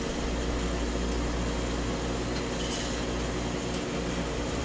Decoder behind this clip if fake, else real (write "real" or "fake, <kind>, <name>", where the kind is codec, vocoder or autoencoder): real